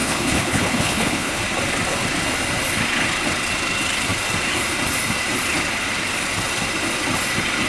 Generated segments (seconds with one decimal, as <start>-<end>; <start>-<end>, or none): 0.0-1.4